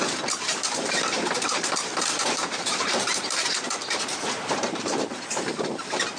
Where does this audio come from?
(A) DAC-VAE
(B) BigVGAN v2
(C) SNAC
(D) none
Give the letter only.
B